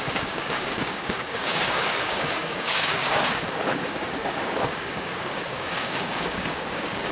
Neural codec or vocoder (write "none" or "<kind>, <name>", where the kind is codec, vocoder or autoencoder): codec, DAC